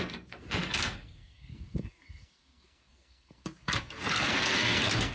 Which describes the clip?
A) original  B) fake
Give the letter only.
B